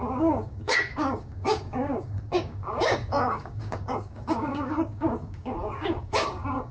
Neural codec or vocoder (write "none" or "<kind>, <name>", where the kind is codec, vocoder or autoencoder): codec, DAC